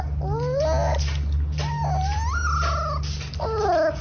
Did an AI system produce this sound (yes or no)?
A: no